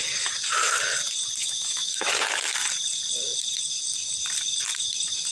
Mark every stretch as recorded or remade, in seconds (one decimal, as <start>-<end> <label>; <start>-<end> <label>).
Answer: 0.0-1.4 recorded; 1.4-2.1 remade; 2.1-5.3 recorded